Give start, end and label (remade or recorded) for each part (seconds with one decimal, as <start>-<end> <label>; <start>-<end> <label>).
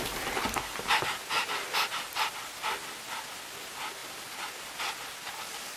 0.0-5.8 recorded